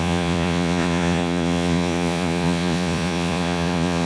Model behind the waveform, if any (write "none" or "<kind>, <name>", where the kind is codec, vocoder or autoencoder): vocoder, Vocos